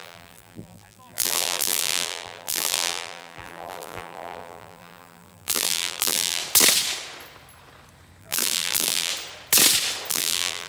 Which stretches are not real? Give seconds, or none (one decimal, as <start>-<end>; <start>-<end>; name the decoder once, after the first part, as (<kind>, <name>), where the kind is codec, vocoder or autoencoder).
0.0-6.4 (vocoder, BigVGAN v2); 8.2-9.1; 10.1-10.7